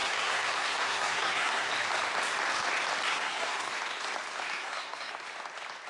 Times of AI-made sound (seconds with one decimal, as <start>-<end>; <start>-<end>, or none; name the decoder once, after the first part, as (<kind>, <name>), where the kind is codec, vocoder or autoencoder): 0.0-1.7 (codec, SNAC); 3.1-3.7; 4.5-5.1